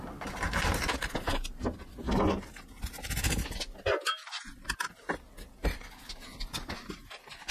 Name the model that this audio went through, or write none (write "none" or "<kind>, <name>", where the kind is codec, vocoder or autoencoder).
none